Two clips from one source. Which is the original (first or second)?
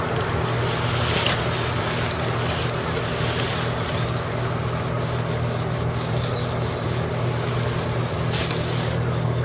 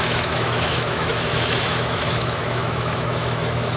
first